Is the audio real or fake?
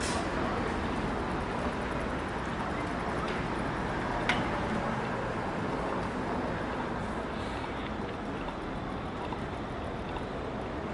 real